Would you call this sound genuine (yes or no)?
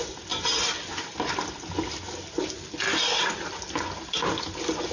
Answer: yes